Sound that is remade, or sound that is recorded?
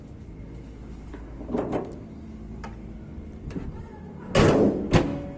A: recorded